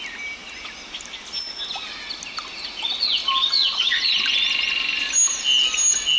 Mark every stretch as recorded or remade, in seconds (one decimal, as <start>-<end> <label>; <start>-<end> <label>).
0.0-3.2 recorded; 3.2-4.3 remade; 4.3-6.2 recorded